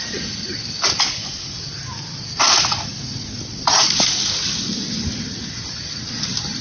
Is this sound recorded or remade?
recorded